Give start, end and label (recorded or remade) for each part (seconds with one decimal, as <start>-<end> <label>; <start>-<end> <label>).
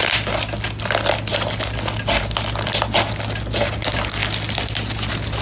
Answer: 0.0-5.4 recorded